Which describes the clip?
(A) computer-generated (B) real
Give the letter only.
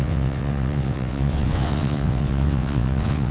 A